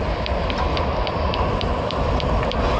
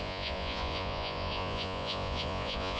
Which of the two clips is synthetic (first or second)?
second